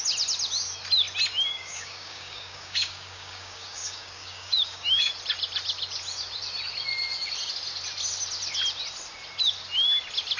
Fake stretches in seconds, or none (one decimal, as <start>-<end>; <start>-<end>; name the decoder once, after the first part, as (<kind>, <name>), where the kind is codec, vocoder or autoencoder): 1.5-5.1 (codec, DAC)